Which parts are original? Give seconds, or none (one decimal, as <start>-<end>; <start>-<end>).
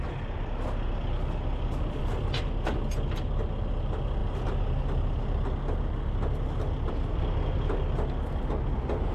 0.0-9.1